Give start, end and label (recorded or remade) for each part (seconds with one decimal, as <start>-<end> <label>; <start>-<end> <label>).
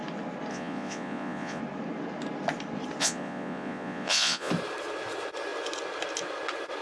0.0-0.5 recorded; 0.5-1.6 remade; 1.6-3.0 recorded; 3.0-4.5 remade; 4.5-6.8 recorded